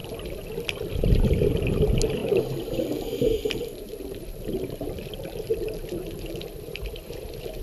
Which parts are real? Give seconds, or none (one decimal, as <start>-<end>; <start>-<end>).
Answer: 0.0-2.2; 6.4-7.6

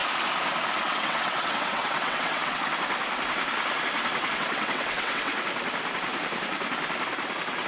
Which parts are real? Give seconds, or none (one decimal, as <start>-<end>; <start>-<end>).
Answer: 0.0-0.8; 2.6-4.3; 5.3-7.7

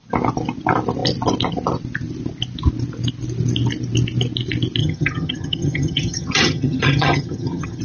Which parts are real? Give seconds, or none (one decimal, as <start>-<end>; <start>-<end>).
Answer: 0.0-4.8

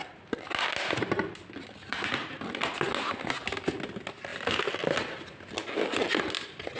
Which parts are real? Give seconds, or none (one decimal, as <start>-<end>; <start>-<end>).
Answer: 0.0-1.8; 2.3-6.8

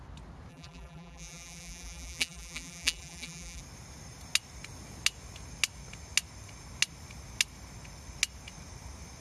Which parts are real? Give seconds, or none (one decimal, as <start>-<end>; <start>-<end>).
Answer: 0.0-0.5; 3.6-9.2

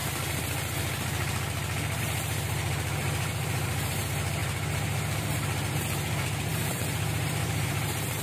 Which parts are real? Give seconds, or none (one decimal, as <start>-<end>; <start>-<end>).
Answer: 0.0-2.0